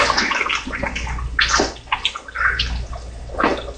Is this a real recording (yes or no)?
yes